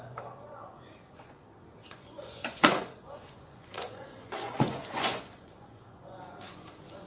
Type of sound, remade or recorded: remade